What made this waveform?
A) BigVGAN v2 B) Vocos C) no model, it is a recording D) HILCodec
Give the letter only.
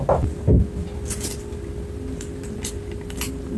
C